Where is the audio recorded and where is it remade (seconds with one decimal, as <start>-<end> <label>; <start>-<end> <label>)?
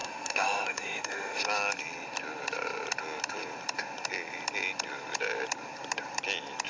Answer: 0.0-1.4 remade; 1.4-6.7 recorded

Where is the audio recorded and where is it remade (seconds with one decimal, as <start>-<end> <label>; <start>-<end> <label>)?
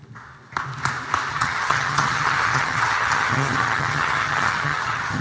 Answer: 0.0-1.3 recorded; 1.3-5.2 remade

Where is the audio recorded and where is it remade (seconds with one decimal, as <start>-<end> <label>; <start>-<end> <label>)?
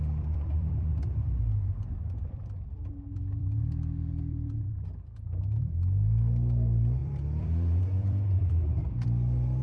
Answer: 0.0-9.6 remade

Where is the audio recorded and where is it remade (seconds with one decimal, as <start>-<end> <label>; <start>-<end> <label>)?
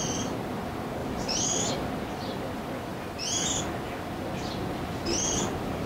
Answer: 0.0-1.0 recorded; 1.0-1.7 remade; 1.7-5.9 recorded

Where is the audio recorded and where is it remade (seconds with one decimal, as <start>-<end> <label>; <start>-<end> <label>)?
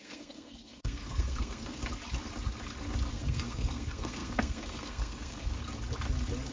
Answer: 0.0-1.8 remade; 1.8-3.1 recorded; 3.1-5.6 remade; 5.6-6.5 recorded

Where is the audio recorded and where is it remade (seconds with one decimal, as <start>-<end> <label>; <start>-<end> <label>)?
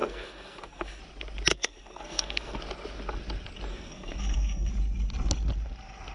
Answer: 0.0-1.0 remade; 1.0-1.5 recorded; 1.5-2.6 remade; 2.6-3.7 recorded; 3.7-4.7 remade; 4.7-6.1 recorded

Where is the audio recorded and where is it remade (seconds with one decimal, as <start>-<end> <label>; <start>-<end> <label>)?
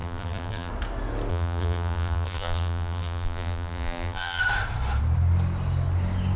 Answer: 0.0-0.7 remade; 0.7-1.3 recorded; 1.3-4.4 remade; 4.4-6.4 recorded